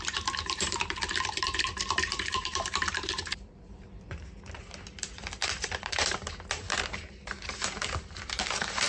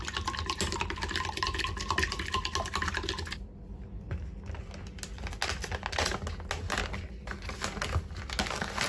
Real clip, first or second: second